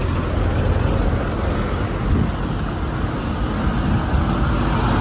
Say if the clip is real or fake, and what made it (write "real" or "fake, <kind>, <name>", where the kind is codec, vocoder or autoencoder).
real